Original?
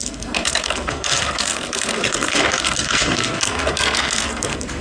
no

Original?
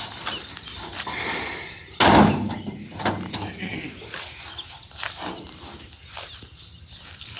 yes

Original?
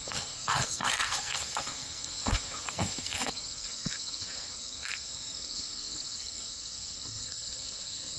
no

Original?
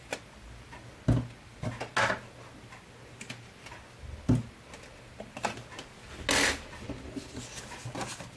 yes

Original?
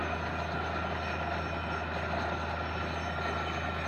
yes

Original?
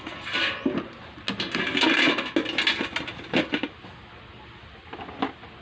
yes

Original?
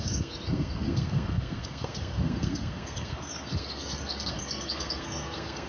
no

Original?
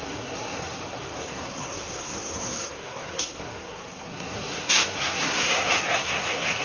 no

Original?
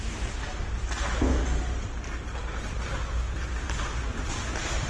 yes